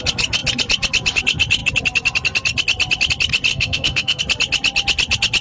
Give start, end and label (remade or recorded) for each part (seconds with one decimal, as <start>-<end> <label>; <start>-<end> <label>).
0.0-3.5 recorded; 3.5-4.2 remade; 4.2-5.4 recorded

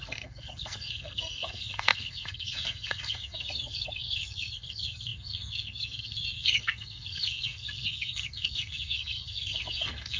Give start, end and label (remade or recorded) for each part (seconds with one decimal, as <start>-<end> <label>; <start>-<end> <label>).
0.0-10.2 remade

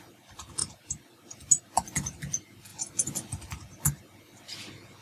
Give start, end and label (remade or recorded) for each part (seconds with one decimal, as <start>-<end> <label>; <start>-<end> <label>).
0.0-5.0 recorded

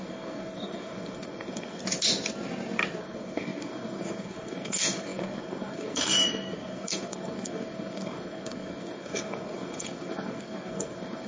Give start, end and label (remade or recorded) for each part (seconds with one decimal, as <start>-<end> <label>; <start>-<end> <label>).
0.0-1.8 remade; 1.8-3.0 recorded; 3.0-11.3 remade